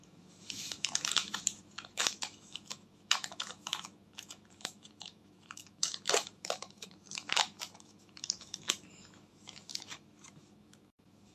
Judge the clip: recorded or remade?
remade